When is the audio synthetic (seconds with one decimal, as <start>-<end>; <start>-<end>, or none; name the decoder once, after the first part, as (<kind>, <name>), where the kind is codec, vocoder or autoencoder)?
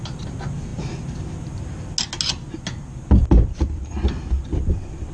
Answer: none